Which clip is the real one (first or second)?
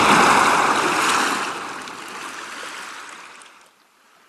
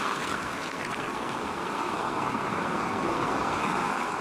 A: first